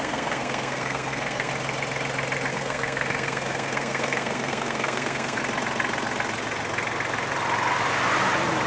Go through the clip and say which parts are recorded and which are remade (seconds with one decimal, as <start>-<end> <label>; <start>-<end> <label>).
0.0-1.5 remade; 1.5-2.5 recorded; 2.5-5.4 remade; 5.4-8.7 recorded